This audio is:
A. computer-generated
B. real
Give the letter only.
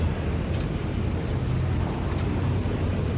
B